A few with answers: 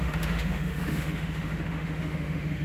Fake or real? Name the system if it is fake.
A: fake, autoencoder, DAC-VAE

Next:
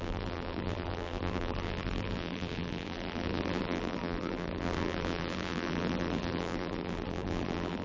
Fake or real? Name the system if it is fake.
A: fake, vocoder, BigVGAN v2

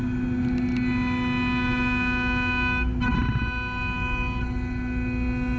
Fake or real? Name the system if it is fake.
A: real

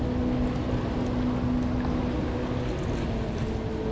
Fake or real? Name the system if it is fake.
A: real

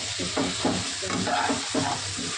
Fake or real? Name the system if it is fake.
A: real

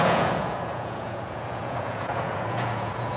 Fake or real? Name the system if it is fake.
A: fake, vocoder, Vocos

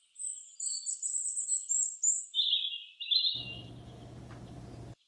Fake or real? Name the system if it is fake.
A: real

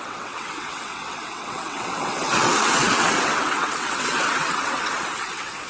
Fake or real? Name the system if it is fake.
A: fake, vocoder, WaveNeXt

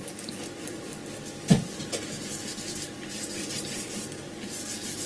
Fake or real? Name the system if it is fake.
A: real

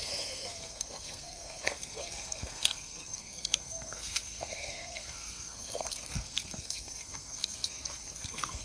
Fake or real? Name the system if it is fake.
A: fake, codec, SNAC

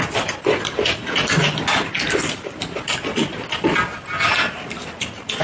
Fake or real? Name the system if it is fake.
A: real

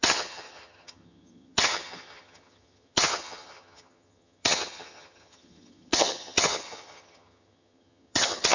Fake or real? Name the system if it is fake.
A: fake, vocoder, HiFi-GAN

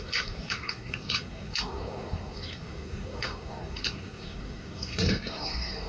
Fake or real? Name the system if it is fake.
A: fake, codec, SNAC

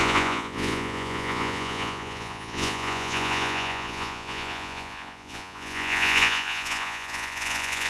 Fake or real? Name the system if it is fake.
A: fake, vocoder, Vocos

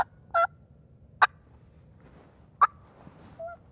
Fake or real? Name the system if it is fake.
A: real